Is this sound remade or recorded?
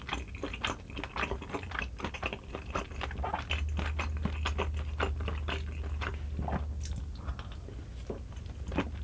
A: recorded